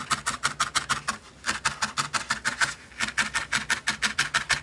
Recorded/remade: recorded